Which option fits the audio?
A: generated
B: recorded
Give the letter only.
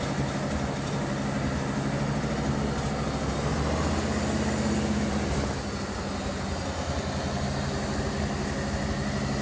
B